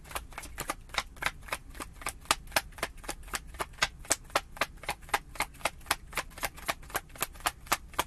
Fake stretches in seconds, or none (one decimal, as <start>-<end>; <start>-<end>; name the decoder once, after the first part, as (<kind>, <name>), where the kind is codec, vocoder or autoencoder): none